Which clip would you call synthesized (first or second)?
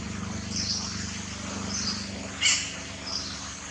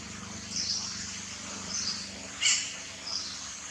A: second